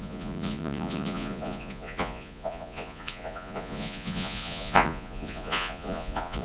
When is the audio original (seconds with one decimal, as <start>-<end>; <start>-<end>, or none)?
none